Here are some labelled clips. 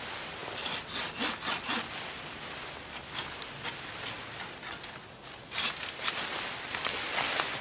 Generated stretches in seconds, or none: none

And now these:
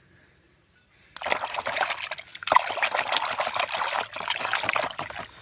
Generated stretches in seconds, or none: none

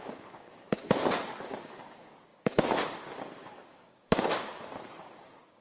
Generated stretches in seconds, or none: 0.0-1.0 (codec, DAC); 1.5-5.6

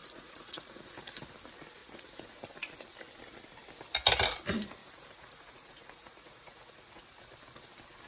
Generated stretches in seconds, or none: 0.0-1.2 (vocoder, Vocos); 1.8-2.3; 4.8-7.2